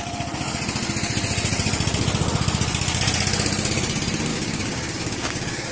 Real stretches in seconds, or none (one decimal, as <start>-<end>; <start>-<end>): 0.0-4.3